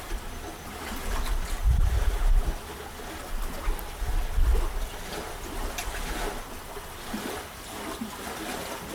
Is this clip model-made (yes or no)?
no